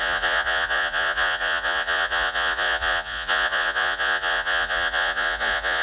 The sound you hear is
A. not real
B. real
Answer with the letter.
A